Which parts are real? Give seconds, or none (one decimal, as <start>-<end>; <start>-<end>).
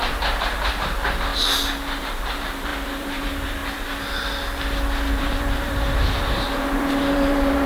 1.3-2.0; 3.6-5.1